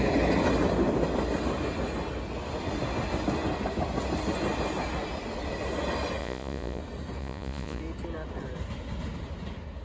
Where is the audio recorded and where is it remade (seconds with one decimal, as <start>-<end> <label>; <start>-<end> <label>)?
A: 0.0-6.2 recorded; 6.2-6.8 remade; 6.8-7.2 recorded; 7.2-7.8 remade; 7.8-9.8 recorded